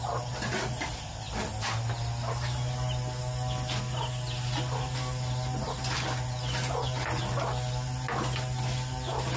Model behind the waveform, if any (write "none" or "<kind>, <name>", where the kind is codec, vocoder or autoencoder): none